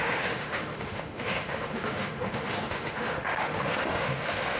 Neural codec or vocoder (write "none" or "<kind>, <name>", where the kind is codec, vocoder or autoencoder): autoencoder, DAC-VAE